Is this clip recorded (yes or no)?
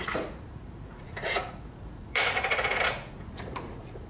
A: no